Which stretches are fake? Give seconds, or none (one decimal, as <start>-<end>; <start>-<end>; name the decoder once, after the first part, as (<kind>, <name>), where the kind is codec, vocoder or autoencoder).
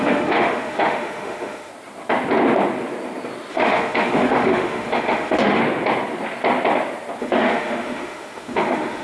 0.0-1.7 (autoencoder, DAC-VAE); 3.5-5.6; 7.2-9.0